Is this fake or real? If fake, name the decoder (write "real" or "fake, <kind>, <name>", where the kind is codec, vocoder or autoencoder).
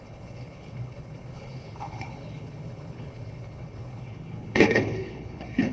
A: fake, codec, HILCodec